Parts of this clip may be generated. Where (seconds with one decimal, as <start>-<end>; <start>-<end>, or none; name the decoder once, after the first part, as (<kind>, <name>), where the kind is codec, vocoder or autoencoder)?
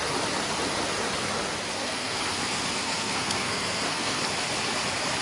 1.7-4.2 (codec, SNAC)